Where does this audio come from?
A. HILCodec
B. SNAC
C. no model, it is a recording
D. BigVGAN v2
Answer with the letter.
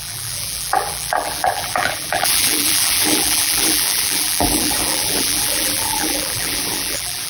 D